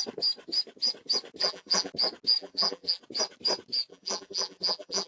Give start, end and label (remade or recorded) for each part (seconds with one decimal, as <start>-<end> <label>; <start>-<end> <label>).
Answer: 0.0-1.4 recorded; 1.4-1.9 remade; 1.9-2.4 recorded; 2.4-3.0 remade; 3.0-3.9 recorded; 3.9-5.1 remade